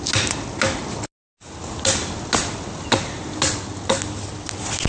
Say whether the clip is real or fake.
real